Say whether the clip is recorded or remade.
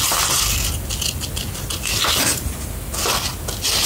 recorded